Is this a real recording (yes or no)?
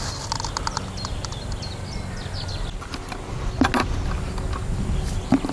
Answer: yes